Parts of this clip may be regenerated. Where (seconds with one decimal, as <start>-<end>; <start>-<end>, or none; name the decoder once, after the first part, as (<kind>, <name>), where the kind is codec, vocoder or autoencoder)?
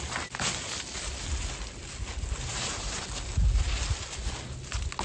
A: 2.5-3.0 (vocoder, BigVGAN v2)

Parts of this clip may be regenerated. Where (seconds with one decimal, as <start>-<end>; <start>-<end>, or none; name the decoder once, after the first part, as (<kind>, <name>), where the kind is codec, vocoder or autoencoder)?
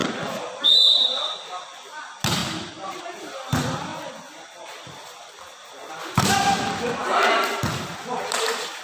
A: 0.0-2.0 (vocoder, BigVGAN v2); 2.4-3.0; 3.9-5.7; 7.0-8.8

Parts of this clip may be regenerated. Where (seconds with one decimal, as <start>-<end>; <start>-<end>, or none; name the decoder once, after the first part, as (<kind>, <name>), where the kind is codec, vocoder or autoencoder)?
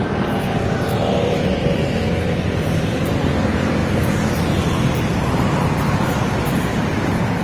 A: 0.0-1.5 (vocoder, BigVGAN v2); 2.2-7.4